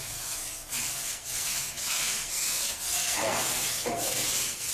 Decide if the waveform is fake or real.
fake